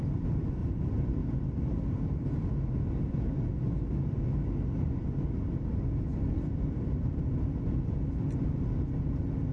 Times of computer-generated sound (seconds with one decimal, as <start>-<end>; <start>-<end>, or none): 0.6-1.3; 6.1-7.7

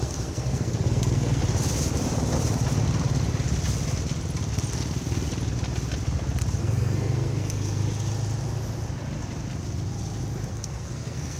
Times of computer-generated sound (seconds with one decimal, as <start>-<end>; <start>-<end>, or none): 0.0-1.4; 6.6-7.8; 10.5-11.4

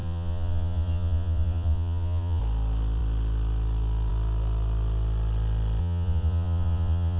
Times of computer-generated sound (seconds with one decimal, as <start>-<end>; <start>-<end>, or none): 0.0-2.4; 5.8-7.2

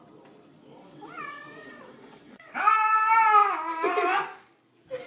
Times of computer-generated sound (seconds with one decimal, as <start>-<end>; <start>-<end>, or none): 0.7-2.6